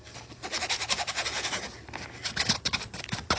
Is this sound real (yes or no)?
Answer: yes